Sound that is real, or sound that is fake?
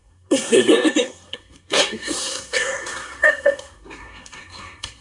fake